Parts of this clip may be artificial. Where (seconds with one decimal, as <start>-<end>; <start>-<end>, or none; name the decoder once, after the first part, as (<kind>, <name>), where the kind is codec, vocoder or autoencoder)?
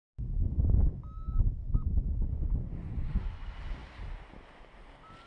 0.4-1.0 (vocoder, Vocos); 1.7-3.4